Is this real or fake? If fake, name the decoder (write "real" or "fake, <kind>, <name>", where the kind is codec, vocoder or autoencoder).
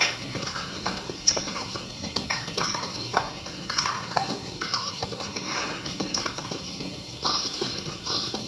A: fake, codec, SNAC